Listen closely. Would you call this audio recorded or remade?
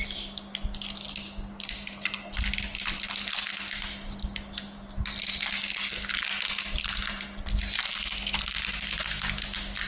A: recorded